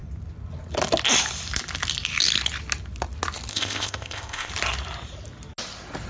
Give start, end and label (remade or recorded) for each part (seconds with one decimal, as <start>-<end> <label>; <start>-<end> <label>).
0.0-3.5 recorded; 3.5-4.5 remade; 4.5-6.1 recorded